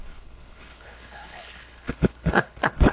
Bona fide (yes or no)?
no